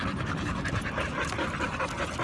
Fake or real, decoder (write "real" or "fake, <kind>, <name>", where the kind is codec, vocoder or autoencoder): real